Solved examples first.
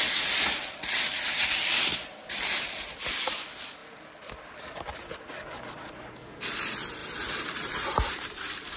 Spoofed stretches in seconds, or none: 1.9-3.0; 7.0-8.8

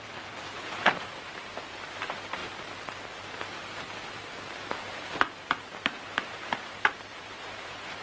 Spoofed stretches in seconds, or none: 0.0-2.4; 4.8-8.0

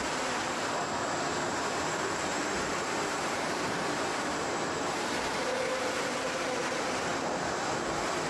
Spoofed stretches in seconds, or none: 0.0-8.3

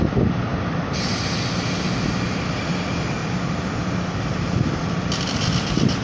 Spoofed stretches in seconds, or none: 0.5-1.1

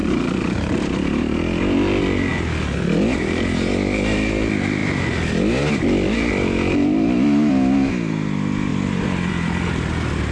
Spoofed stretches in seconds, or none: 0.0-1.2; 4.8-7.5; 8.7-9.3

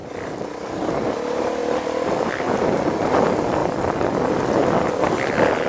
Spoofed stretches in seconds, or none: 0.9-1.6; 3.0-3.6

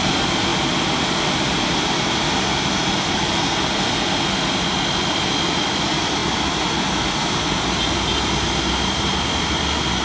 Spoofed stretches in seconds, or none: none